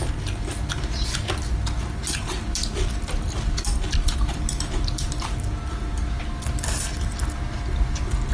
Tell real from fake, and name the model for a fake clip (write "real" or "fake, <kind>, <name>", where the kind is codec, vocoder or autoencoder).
real